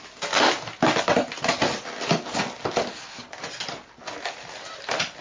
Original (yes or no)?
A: yes